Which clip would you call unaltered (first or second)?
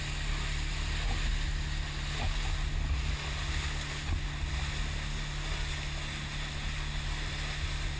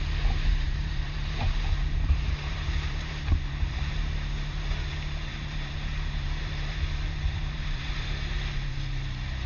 first